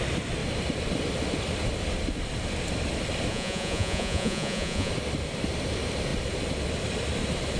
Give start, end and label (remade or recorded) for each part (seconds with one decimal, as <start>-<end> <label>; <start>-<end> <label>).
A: 0.0-3.3 recorded; 3.3-4.9 remade; 4.9-7.6 recorded